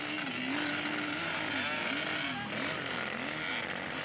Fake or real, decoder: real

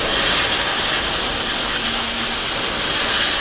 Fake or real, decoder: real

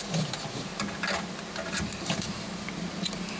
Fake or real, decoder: real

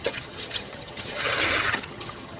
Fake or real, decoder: fake, vocoder, HiFi-GAN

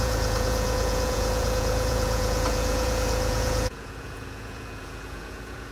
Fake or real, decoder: fake, vocoder, Vocos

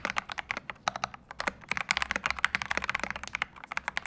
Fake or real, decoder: real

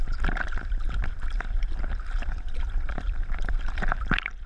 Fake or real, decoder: fake, vocoder, BigVGAN v2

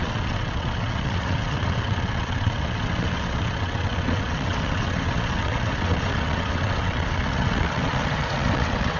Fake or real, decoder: fake, vocoder, WaveNeXt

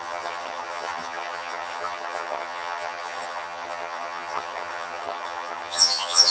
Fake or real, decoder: fake, vocoder, HiFi-GAN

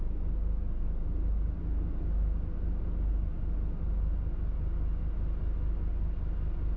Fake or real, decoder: real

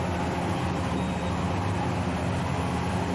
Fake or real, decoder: real